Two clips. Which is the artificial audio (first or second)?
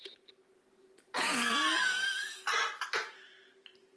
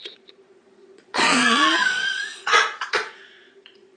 second